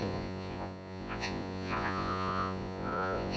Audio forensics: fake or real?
fake